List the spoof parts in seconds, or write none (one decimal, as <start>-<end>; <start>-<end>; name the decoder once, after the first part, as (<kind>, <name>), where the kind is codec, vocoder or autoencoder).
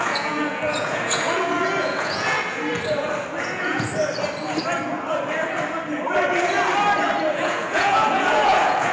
0.0-2.7 (vocoder, Vocos); 3.4-3.9; 7.3-8.9